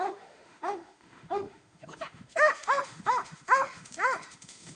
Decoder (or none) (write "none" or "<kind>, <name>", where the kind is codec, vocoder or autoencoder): autoencoder, DAC-VAE